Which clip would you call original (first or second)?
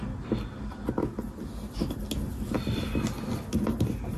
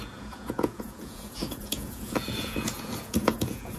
first